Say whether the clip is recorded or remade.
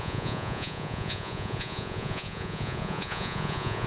remade